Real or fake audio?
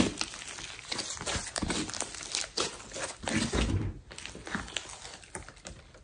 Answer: real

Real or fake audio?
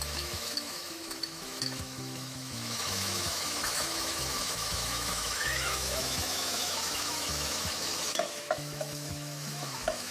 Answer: fake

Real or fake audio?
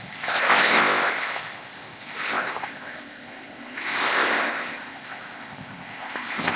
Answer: fake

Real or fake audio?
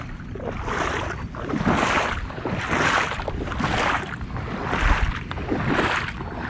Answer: real